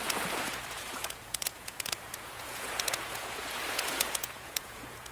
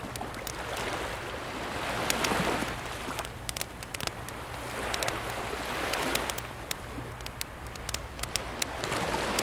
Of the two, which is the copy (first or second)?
first